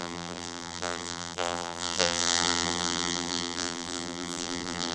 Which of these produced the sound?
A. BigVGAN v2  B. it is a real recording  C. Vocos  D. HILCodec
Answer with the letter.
A